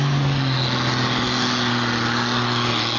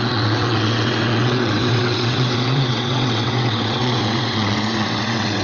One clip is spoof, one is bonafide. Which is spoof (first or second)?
second